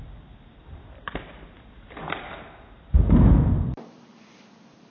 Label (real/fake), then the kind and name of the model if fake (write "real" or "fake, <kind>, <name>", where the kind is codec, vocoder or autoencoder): real